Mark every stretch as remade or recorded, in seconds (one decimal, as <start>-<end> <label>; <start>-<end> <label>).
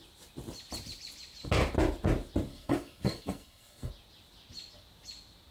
0.0-2.5 recorded; 2.5-3.9 remade; 3.9-5.5 recorded